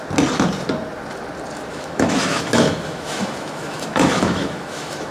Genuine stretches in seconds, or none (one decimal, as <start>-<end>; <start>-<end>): 0.0-1.7